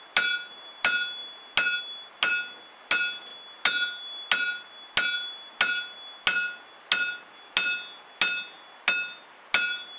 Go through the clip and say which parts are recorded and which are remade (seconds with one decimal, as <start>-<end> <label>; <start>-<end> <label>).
0.0-10.0 recorded